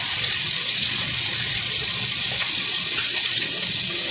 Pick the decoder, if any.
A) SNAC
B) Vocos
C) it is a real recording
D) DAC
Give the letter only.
B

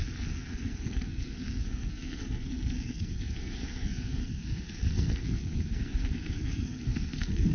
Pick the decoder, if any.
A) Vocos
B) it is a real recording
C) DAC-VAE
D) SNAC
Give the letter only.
D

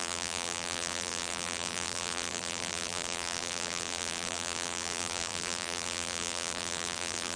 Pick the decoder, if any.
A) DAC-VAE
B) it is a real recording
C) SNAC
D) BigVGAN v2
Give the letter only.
D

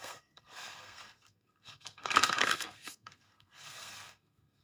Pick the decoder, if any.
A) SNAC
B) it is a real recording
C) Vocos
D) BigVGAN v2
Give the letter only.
A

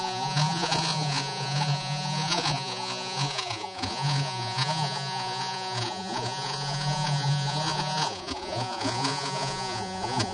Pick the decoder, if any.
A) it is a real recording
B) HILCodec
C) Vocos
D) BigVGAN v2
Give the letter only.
C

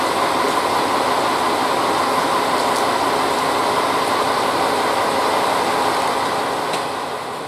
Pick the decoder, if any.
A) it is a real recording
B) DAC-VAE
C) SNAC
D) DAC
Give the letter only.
A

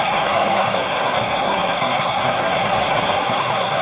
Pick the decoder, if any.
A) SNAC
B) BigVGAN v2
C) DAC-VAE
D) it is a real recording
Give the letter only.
A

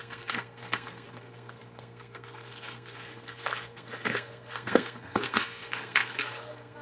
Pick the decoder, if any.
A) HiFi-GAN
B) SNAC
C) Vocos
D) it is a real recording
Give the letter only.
B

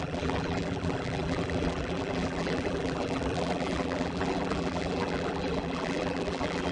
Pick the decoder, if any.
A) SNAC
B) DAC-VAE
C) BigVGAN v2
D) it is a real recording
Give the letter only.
C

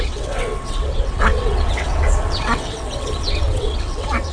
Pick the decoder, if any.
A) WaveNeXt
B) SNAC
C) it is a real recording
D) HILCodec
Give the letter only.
A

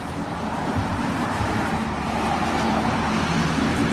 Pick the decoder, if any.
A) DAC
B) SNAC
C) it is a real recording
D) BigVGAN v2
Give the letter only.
D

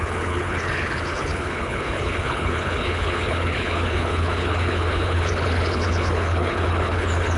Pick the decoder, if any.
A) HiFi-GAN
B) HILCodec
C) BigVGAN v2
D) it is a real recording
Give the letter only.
B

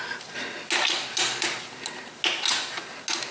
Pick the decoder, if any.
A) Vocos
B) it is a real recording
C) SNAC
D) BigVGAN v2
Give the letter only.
B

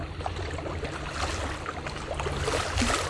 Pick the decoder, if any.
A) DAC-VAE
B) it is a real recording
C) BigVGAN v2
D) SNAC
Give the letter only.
B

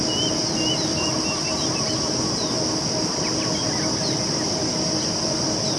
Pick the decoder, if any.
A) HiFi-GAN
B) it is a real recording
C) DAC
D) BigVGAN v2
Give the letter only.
B